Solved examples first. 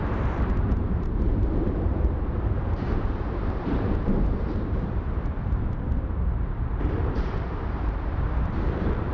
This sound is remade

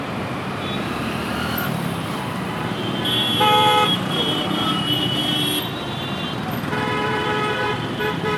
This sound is remade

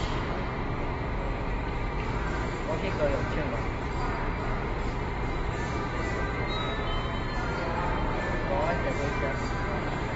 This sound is recorded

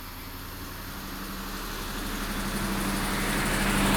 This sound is recorded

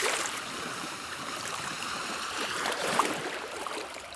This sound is remade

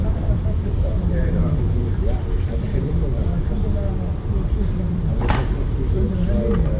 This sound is remade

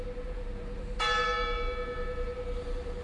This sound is remade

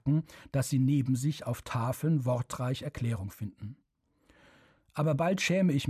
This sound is recorded